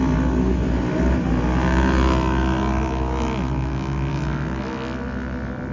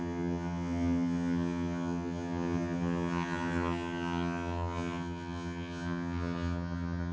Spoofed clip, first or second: second